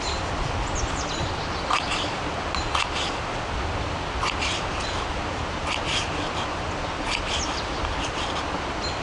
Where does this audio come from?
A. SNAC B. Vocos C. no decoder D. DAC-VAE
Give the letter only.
C